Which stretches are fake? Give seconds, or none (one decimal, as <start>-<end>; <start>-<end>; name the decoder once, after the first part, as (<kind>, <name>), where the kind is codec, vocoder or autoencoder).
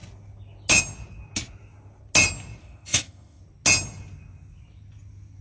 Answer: 2.6-3.4 (autoencoder, DAC-VAE)